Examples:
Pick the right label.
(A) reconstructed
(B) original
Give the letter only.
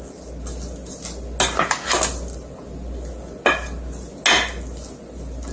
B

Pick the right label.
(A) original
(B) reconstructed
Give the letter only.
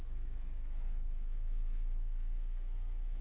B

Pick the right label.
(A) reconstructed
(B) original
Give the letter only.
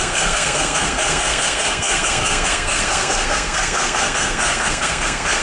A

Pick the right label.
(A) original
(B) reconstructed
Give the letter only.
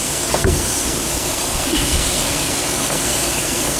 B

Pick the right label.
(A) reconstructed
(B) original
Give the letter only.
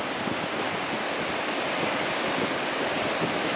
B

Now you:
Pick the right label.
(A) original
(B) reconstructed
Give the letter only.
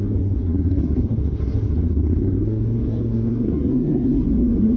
B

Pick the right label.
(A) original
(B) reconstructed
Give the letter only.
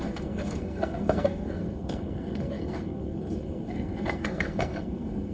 B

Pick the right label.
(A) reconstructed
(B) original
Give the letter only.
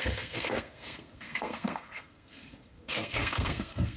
A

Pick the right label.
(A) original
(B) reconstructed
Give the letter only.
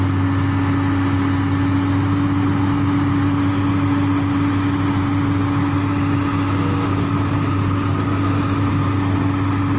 A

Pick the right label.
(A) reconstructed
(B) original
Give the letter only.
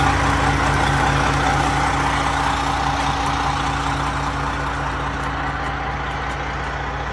B